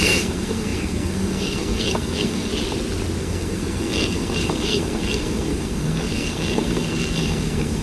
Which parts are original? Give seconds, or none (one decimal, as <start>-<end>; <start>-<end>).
2.5-3.2